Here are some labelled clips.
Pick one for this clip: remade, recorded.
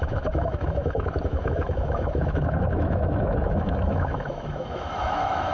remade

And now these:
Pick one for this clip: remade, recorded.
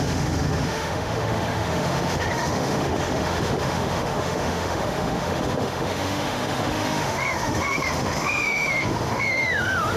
remade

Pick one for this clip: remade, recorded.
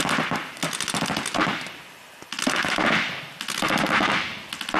recorded